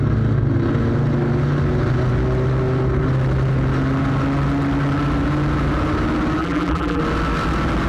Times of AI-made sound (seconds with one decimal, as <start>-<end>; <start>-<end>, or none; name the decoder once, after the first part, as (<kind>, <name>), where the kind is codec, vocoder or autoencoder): 6.4-7.0 (vocoder, BigVGAN v2)